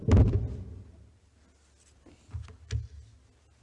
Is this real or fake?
real